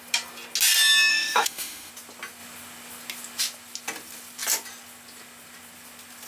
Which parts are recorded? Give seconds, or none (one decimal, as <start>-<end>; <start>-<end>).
0.0-1.1; 1.9-6.3